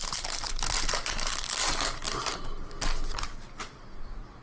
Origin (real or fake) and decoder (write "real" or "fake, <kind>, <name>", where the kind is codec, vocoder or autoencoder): real